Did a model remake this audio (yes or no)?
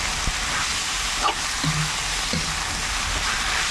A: no